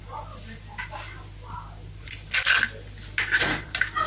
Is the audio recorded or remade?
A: recorded